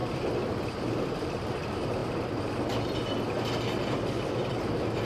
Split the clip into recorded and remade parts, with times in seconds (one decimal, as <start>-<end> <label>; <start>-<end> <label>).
0.0-5.1 recorded